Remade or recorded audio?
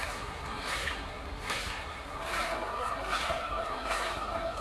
remade